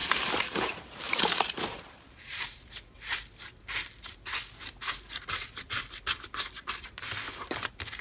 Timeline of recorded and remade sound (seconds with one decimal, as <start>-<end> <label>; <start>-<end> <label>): 0.0-3.1 remade; 3.1-8.0 recorded